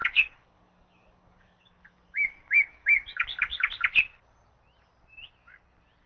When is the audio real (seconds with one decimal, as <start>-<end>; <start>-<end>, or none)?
3.7-6.1